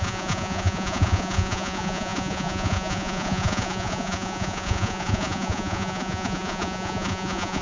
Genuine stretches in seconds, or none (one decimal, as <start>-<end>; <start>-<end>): none